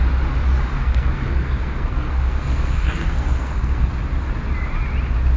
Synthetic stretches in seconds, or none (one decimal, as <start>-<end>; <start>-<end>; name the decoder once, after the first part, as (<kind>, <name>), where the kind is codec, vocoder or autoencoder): 0.7-3.9 (codec, SNAC)